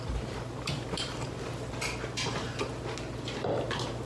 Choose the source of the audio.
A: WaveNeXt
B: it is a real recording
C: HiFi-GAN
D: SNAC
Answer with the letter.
B